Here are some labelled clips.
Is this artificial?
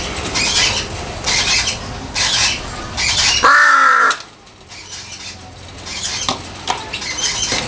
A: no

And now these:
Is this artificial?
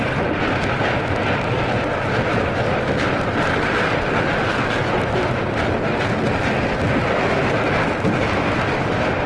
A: no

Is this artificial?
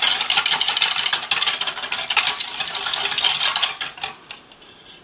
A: no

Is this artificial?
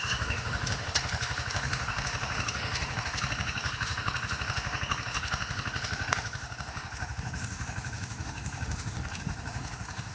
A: yes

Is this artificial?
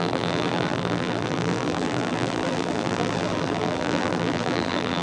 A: yes